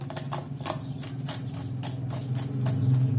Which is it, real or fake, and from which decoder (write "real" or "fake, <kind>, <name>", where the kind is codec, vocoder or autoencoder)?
real